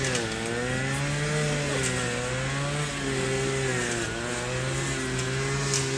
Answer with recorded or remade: recorded